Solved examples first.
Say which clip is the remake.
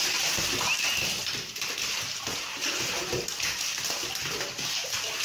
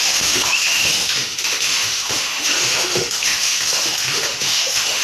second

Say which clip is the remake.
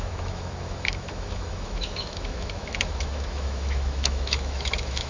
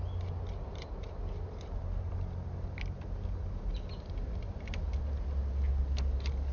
first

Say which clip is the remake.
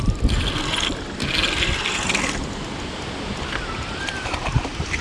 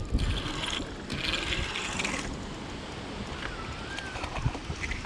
first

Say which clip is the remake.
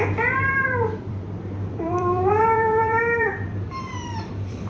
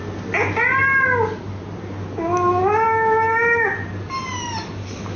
first